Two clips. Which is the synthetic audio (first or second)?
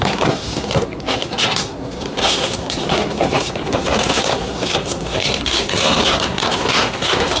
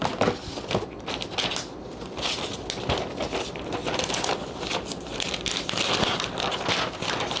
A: first